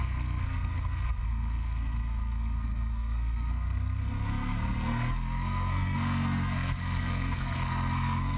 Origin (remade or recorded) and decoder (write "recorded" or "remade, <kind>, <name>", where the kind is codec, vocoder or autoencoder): remade, codec, SNAC